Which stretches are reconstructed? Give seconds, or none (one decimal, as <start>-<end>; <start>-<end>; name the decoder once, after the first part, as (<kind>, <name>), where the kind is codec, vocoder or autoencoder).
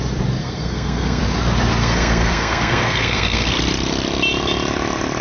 0.4-1.2 (codec, SNAC); 1.8-3.5